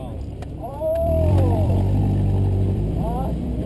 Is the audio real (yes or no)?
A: no